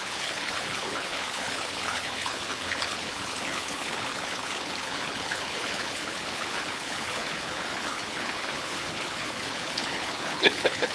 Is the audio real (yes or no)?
no